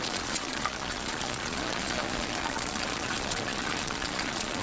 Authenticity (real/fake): fake